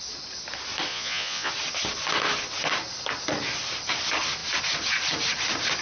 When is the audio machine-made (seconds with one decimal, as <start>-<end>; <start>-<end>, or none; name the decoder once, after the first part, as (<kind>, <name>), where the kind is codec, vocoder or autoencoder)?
0.9-1.5 (vocoder, Vocos)